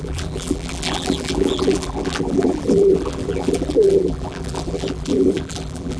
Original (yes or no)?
no